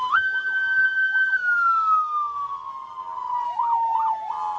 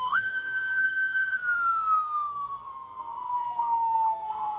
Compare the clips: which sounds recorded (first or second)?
first